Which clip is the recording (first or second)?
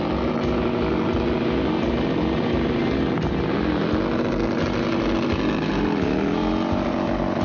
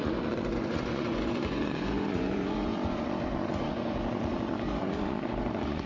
first